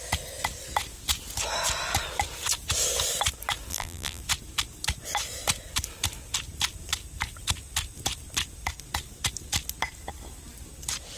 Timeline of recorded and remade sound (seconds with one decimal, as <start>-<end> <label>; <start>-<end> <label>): 0.0-3.7 recorded; 3.7-4.2 remade; 4.2-11.2 recorded